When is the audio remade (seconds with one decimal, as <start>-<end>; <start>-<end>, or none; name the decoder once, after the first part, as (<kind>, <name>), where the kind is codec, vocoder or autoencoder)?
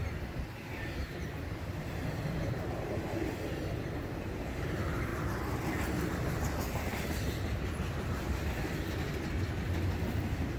6.9-8.9 (vocoder, BigVGAN v2)